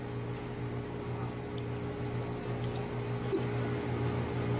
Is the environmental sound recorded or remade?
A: recorded